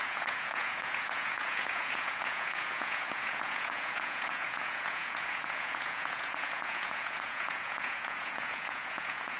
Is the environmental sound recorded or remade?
remade